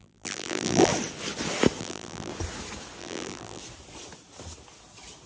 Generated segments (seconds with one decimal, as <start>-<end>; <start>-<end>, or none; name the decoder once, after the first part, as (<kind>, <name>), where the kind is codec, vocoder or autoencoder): 0.0-0.9 (vocoder, BigVGAN v2); 1.8-2.3; 3.0-3.6